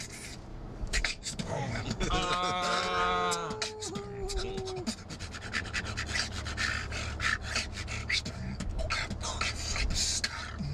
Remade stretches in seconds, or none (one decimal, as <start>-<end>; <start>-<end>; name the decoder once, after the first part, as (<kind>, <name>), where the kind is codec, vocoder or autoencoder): 0.5-2.3 (codec, DAC); 8.0-8.8